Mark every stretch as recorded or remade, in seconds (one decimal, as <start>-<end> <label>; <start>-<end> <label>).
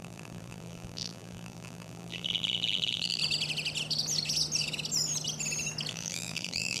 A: 0.0-3.2 remade; 3.2-5.9 recorded; 5.9-6.8 remade